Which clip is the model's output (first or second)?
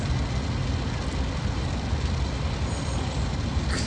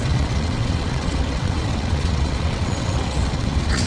second